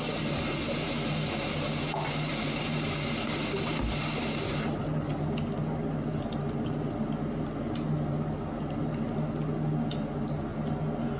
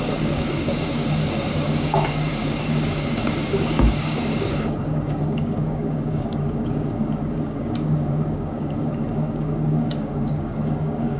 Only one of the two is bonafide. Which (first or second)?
first